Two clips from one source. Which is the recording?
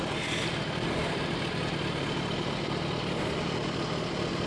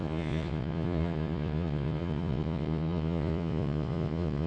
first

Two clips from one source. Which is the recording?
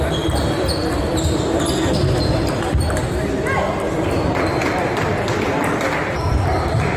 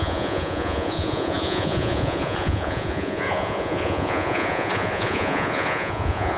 first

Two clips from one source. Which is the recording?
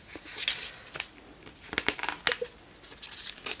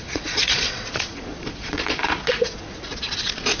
first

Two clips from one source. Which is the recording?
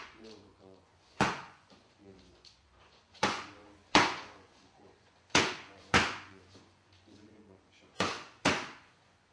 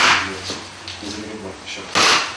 second